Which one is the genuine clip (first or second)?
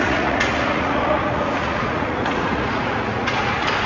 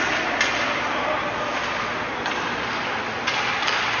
second